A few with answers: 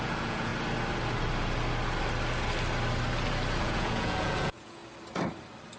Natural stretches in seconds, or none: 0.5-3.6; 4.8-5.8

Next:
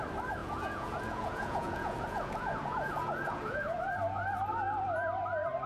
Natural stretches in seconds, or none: 0.0-0.4; 3.8-5.7

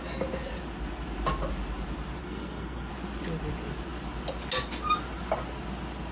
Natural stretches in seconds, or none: 0.0-2.2; 2.9-6.1